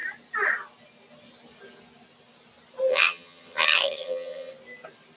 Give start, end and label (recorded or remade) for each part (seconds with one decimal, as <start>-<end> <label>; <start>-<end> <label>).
0.0-2.9 recorded; 2.9-4.5 remade; 4.5-5.2 recorded